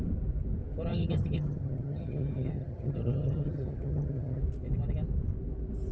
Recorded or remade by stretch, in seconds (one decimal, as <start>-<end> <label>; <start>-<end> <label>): 0.0-0.9 recorded; 0.9-4.4 remade; 4.4-5.9 recorded